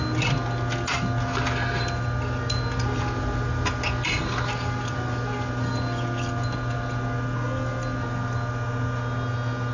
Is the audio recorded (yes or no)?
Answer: yes